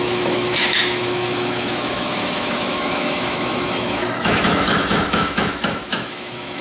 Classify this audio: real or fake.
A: fake